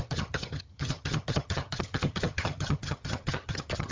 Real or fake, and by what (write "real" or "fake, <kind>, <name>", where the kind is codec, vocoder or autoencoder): fake, vocoder, HiFi-GAN